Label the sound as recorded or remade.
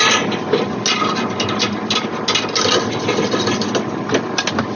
recorded